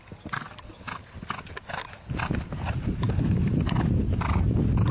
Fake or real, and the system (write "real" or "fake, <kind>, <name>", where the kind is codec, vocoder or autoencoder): real